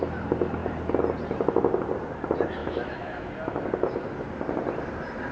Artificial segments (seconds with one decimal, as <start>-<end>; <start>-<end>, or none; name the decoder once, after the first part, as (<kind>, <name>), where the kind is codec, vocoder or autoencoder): 2.6-3.3 (autoencoder, DAC-VAE)